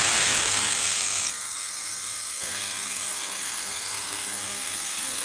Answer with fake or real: fake